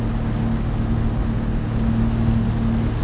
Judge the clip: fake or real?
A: real